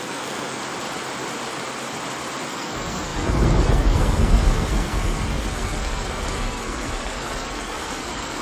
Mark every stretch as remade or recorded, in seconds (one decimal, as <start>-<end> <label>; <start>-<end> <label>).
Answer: 0.0-0.6 remade; 0.6-2.5 recorded; 2.5-8.4 remade